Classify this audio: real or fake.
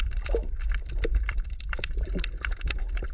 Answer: fake